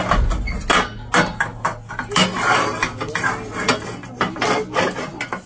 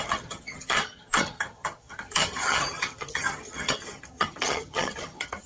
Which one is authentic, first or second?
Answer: first